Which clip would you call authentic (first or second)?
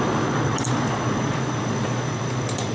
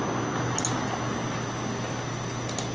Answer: second